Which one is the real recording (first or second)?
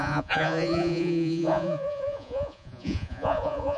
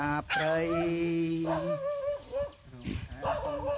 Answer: second